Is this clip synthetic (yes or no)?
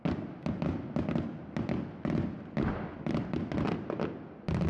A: no